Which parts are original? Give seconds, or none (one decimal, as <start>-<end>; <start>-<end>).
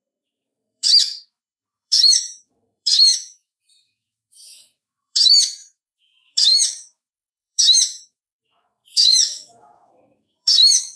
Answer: none